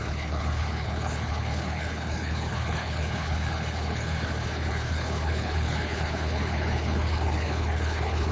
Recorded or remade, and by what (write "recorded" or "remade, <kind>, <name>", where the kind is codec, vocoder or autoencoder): remade, codec, HILCodec